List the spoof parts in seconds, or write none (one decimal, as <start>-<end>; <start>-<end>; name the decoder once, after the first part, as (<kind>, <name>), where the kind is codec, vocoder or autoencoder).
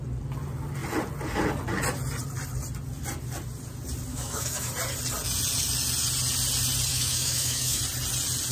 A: 4.1-4.7 (autoencoder, DAC-VAE); 6.9-7.8